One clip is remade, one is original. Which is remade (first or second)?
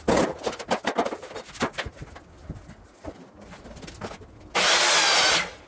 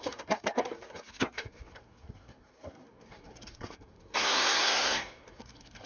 second